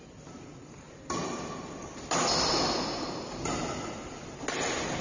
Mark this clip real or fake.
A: real